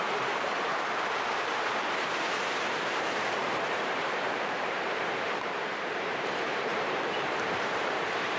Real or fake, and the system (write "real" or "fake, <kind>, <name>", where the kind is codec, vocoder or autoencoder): fake, vocoder, BigVGAN v2